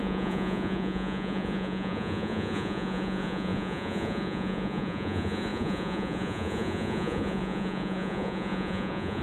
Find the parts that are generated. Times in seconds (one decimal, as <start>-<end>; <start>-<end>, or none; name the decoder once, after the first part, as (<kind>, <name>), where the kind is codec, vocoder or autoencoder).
0.0-9.2 (vocoder, Vocos)